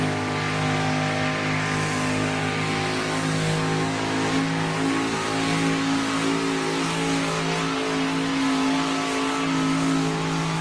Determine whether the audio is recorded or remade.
recorded